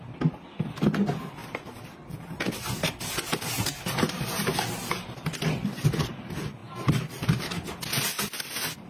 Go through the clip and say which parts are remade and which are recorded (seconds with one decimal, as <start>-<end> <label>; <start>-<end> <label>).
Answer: 0.0-8.9 recorded